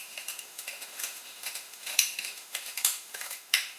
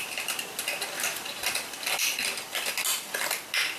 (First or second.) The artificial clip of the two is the first